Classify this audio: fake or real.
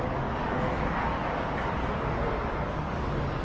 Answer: fake